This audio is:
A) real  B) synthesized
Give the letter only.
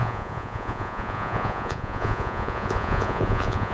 B